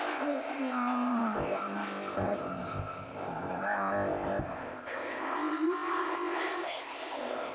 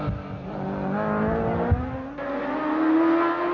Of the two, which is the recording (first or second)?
second